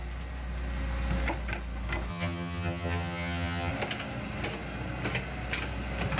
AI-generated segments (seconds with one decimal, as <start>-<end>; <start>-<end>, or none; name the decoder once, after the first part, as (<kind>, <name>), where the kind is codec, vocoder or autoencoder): 2.1-3.7 (vocoder, HiFi-GAN)